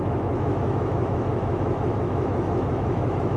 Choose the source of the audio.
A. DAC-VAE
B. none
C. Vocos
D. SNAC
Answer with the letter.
A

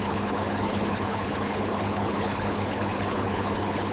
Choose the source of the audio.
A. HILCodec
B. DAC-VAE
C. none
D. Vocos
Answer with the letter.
A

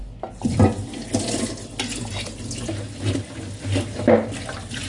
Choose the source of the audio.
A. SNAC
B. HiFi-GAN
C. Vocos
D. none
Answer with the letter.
D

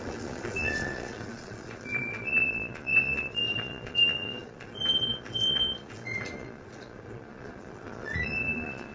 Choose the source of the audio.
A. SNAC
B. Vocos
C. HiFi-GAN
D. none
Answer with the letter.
B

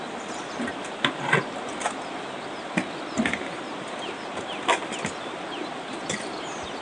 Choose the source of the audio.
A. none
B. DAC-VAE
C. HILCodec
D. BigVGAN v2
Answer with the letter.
A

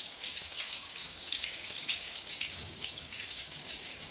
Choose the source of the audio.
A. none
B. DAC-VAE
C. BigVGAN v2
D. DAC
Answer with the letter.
D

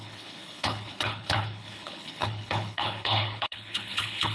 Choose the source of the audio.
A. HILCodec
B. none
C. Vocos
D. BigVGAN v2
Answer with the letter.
A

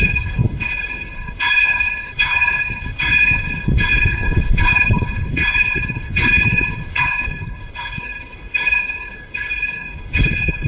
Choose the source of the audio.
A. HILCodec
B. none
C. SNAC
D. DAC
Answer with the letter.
A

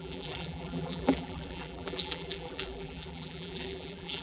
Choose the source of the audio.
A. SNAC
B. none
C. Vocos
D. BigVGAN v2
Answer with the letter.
D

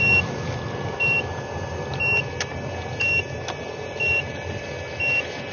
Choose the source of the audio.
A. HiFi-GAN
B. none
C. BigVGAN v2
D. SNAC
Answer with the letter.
B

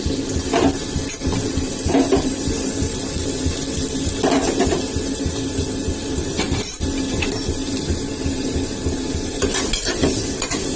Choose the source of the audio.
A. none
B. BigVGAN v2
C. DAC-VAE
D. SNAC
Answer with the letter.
A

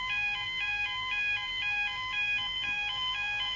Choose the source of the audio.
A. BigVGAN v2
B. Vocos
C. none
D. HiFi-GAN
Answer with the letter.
A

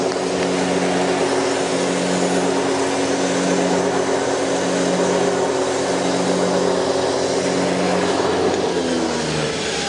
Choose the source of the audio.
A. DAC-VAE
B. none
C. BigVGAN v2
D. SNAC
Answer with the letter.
B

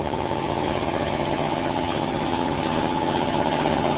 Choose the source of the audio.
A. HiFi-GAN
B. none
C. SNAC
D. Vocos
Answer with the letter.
A